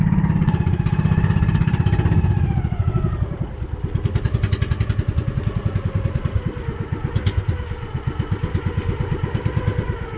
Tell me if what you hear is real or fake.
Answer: real